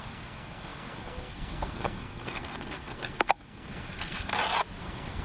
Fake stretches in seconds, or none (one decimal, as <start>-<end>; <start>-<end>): 0.0-4.3; 4.8-5.2